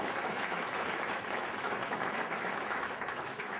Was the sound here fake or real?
fake